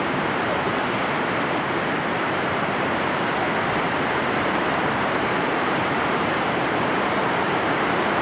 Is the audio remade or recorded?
remade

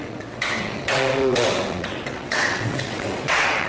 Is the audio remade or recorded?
remade